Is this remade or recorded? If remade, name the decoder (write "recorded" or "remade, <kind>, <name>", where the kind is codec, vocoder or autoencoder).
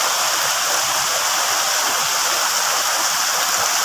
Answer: recorded